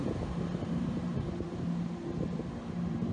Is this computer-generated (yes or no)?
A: yes